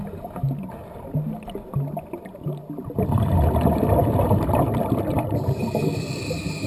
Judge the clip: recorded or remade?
recorded